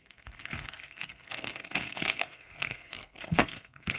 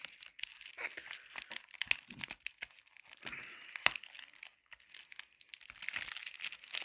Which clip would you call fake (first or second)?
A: first